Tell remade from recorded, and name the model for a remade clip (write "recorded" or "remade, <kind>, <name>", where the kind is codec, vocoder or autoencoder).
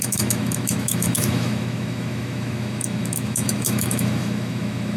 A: remade, autoencoder, DAC-VAE